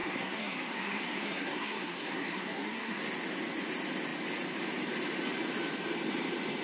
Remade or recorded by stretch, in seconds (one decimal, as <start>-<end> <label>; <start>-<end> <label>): 0.0-3.0 remade; 3.0-6.6 recorded